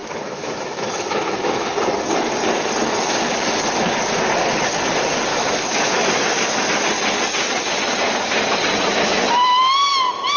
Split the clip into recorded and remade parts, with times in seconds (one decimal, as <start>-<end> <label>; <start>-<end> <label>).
0.0-1.7 remade; 1.7-5.3 recorded; 5.3-5.9 remade; 5.9-10.4 recorded